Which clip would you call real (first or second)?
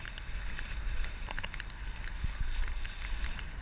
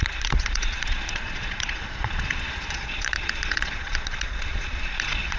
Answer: first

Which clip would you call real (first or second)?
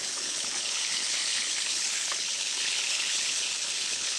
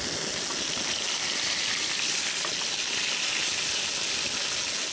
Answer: second